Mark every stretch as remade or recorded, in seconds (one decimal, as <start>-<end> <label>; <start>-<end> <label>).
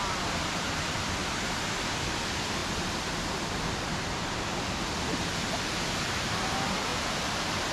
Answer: 0.0-1.2 remade; 1.2-1.8 recorded; 1.8-2.6 remade; 2.6-4.8 recorded; 4.8-5.3 remade; 5.3-6.0 recorded; 6.0-6.9 remade; 6.9-7.7 recorded